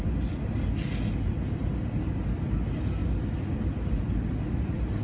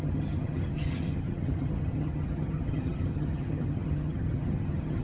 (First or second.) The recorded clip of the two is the first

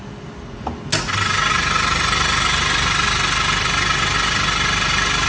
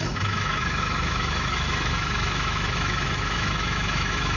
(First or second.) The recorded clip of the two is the first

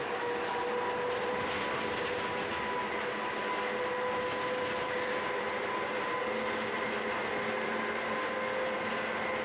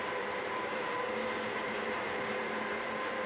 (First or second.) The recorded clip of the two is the first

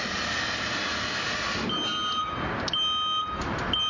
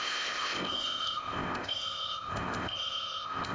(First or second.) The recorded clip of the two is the first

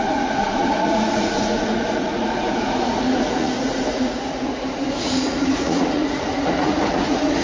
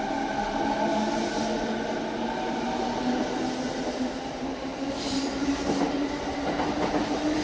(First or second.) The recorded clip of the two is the second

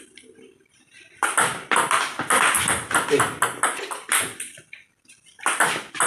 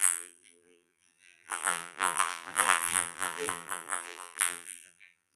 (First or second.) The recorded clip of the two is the first